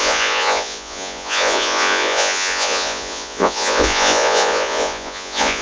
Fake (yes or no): yes